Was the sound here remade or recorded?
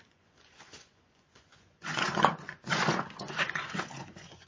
remade